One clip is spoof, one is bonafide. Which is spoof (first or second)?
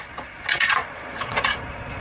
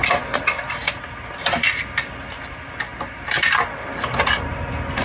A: first